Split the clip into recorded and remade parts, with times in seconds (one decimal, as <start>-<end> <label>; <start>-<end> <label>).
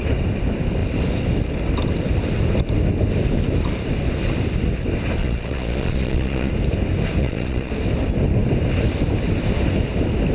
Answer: 0.0-5.2 recorded; 5.2-6.5 remade; 6.5-7.2 recorded; 7.2-7.7 remade; 7.7-10.3 recorded